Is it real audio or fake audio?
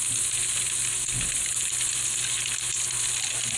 real